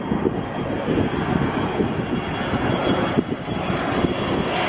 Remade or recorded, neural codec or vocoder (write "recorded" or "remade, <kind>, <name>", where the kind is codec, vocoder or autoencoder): recorded